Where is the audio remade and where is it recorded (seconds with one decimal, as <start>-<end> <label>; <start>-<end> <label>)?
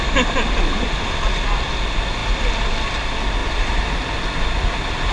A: 0.0-3.4 recorded; 3.4-3.9 remade; 3.9-5.1 recorded